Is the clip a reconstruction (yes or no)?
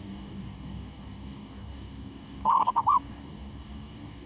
yes